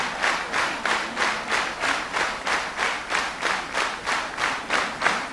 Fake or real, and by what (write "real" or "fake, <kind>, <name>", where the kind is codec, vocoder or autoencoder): real